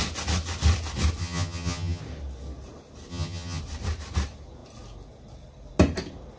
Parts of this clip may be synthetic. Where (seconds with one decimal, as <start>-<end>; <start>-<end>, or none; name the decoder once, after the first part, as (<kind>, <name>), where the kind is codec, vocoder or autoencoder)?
1.2-2.0 (vocoder, HiFi-GAN); 3.1-3.6